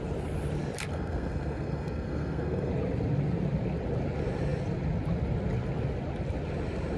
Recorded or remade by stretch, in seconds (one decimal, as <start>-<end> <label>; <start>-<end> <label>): 0.0-0.9 recorded; 0.9-2.7 remade; 2.7-7.0 recorded